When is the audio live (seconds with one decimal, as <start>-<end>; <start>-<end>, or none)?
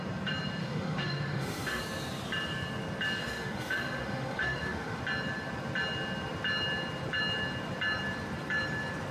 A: 0.0-0.6; 1.8-3.2; 5.0-9.1